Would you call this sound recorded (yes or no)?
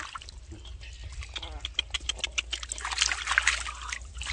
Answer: yes